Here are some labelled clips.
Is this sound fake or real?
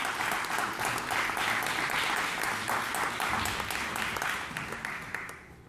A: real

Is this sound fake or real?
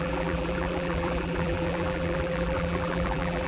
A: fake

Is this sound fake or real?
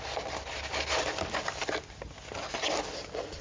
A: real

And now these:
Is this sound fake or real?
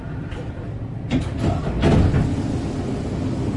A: real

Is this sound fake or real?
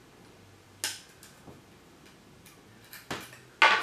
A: real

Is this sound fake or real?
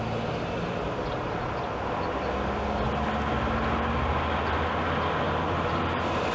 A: real